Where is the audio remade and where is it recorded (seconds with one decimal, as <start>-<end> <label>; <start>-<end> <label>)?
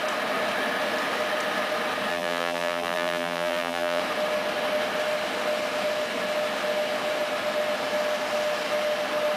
0.0-2.1 recorded; 2.1-4.0 remade; 4.0-9.4 recorded